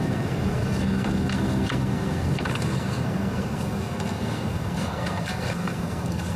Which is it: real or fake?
fake